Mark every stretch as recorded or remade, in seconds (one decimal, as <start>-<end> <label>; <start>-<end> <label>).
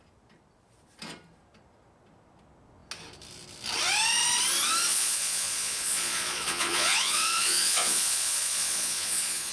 0.0-4.9 recorded; 4.9-9.5 remade